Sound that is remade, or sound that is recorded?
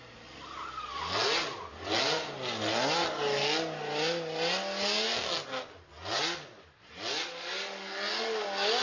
recorded